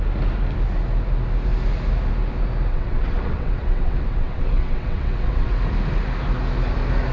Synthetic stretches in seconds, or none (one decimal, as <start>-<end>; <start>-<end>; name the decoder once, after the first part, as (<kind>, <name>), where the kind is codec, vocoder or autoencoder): 2.7-5.6 (vocoder, WaveNeXt)